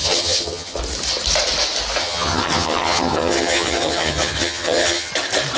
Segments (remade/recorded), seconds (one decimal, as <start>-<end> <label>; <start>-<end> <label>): 0.0-0.8 remade; 0.8-2.0 recorded; 2.0-5.1 remade; 5.1-5.6 recorded